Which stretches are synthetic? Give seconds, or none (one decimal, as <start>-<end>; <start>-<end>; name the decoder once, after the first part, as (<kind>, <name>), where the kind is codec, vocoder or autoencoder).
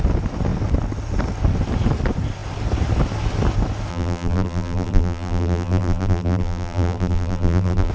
3.9-7.9 (vocoder, BigVGAN v2)